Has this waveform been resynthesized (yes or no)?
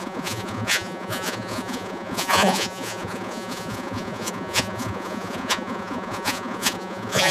yes